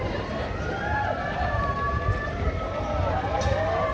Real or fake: fake